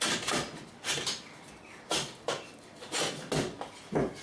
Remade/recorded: recorded